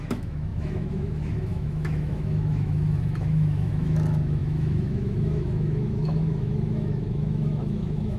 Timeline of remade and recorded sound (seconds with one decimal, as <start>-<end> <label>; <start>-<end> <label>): 0.0-8.2 remade